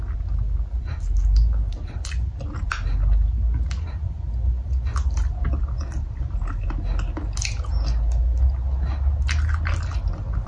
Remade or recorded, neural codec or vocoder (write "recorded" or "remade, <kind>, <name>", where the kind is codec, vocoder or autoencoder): recorded